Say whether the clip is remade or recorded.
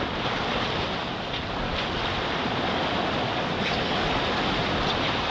recorded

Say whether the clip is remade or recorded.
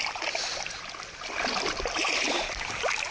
recorded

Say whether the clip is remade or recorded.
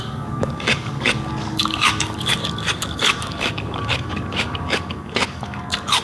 remade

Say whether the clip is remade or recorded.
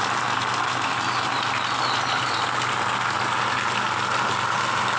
recorded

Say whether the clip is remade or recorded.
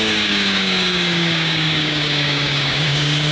remade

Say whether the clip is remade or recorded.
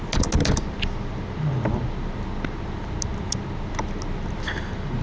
recorded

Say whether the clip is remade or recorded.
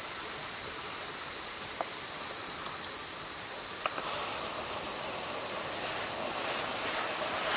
recorded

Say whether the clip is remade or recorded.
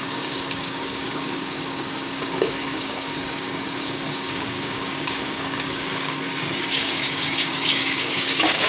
remade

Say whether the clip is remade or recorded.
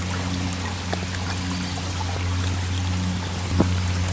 recorded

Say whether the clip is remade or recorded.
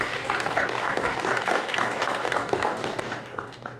remade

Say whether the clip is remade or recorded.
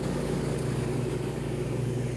remade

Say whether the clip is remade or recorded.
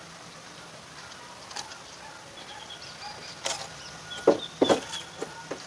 recorded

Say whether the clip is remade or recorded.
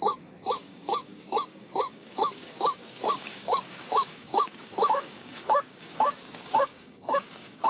remade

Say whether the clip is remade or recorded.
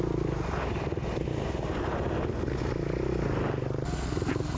recorded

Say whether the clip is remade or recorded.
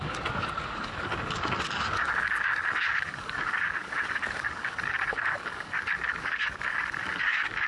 remade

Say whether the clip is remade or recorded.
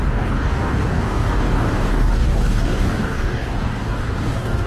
remade